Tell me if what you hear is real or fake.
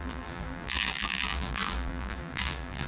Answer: fake